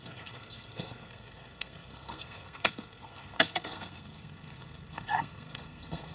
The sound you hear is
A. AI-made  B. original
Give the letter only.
A